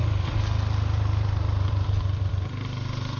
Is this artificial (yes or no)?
no